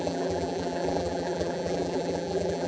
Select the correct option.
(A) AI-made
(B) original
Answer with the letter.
A